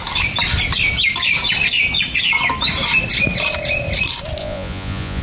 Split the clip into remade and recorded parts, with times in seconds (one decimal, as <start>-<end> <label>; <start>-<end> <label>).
0.0-4.4 recorded; 4.4-5.2 remade

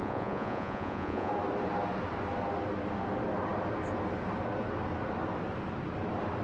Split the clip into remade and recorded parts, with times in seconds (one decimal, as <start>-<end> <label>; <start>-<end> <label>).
0.0-1.3 remade; 1.3-6.4 recorded

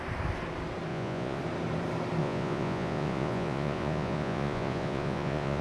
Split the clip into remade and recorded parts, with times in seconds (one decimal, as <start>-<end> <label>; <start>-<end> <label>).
0.0-0.9 recorded; 0.9-1.4 remade; 1.4-2.2 recorded; 2.2-5.6 remade